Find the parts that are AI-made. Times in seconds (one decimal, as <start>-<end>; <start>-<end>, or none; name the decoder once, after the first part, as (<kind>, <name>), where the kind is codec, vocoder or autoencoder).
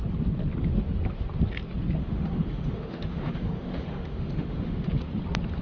2.0-4.9 (autoencoder, DAC-VAE)